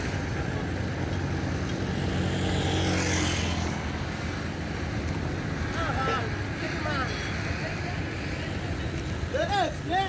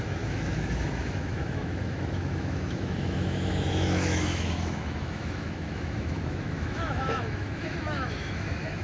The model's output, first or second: second